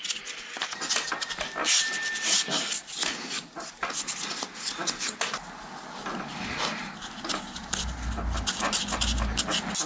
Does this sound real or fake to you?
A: real